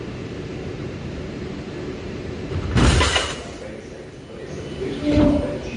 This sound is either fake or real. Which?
fake